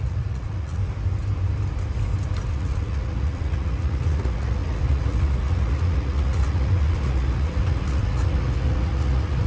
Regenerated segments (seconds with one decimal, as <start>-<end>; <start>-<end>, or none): 0.0-0.8; 2.5-9.5